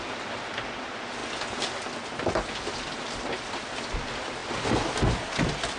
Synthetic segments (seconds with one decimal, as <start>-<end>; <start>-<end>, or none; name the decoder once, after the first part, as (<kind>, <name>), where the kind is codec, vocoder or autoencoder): none